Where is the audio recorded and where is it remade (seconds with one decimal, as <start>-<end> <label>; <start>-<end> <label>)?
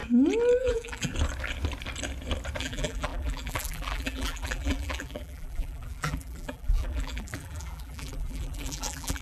0.0-0.6 recorded; 0.6-1.1 remade; 1.1-2.6 recorded; 2.6-9.2 remade